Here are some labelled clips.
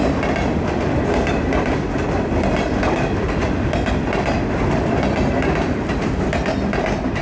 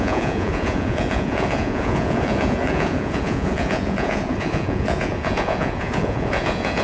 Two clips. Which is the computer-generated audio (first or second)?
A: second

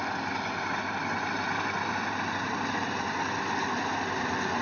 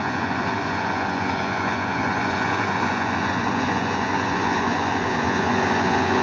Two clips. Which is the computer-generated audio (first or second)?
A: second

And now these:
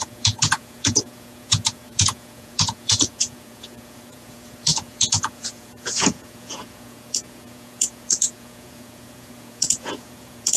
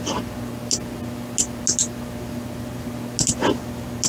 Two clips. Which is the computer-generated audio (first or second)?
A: first